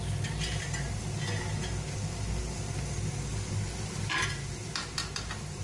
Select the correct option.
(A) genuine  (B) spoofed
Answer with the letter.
A